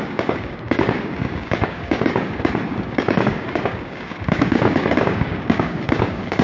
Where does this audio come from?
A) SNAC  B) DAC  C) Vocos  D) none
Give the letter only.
B